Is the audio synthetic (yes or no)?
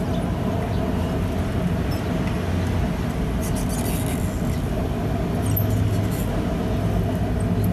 no